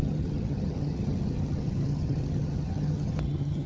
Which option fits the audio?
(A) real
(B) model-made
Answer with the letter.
B